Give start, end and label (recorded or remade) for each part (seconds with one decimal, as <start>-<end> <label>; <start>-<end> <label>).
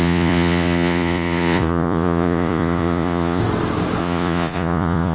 0.0-3.4 remade; 3.4-4.0 recorded; 4.0-5.1 remade